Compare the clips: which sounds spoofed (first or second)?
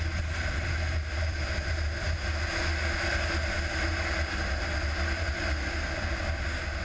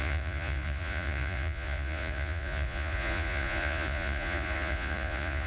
second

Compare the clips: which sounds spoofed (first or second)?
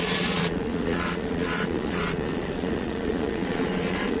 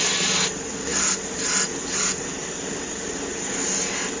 first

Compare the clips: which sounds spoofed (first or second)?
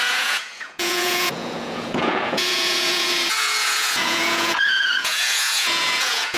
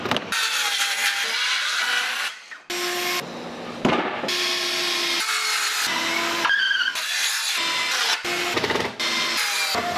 first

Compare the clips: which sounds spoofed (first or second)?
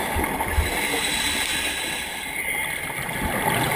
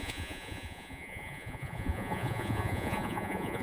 second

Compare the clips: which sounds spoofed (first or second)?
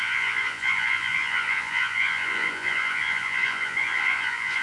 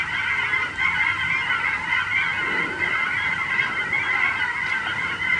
first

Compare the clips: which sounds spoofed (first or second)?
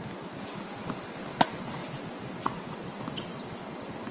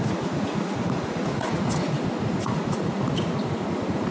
second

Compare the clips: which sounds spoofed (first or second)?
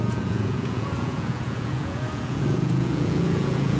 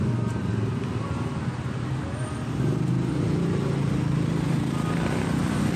first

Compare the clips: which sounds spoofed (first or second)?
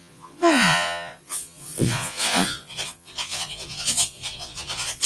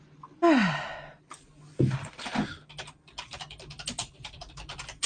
first